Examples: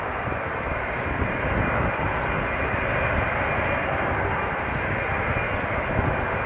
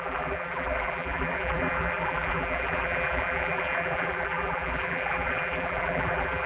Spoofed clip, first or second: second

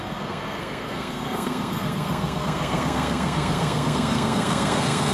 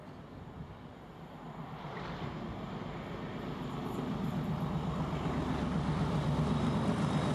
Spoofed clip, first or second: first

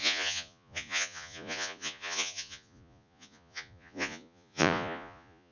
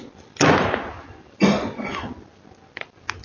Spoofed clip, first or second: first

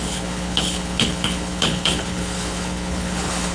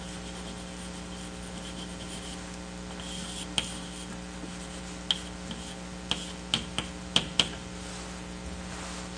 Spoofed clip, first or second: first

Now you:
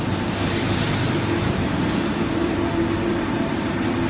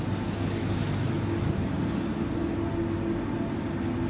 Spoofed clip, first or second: first